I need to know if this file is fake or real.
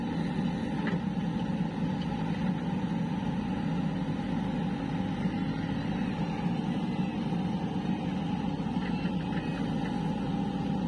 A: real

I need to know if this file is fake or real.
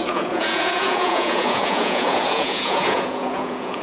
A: fake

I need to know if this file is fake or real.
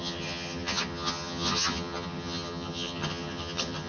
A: fake